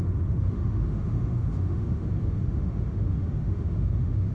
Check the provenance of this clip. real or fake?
fake